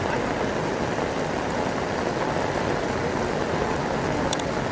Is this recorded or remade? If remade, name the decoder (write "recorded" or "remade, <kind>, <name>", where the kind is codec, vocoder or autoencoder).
recorded